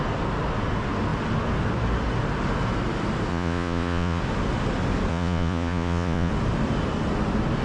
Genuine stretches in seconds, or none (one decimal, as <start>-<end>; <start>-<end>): 0.0-3.3; 4.2-5.1; 6.3-7.6